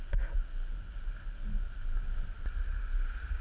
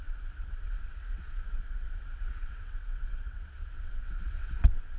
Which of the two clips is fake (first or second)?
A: second